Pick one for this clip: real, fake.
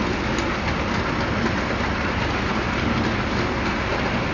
real